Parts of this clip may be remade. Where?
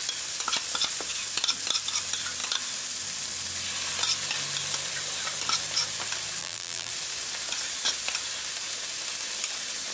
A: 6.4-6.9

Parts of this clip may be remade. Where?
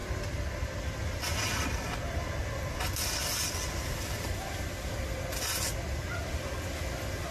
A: none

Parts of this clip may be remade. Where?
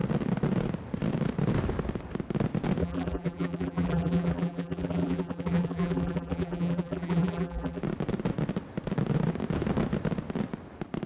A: 2.8-7.8